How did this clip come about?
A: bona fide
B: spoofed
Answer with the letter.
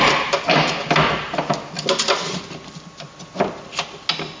A